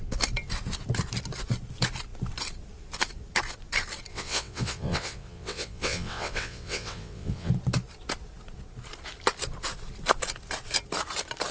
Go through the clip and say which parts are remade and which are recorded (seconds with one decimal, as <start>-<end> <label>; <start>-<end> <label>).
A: 0.0-4.1 recorded; 4.1-7.5 remade; 7.5-11.5 recorded